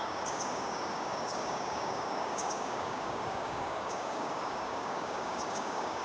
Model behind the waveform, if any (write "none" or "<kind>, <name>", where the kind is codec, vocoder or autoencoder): codec, DAC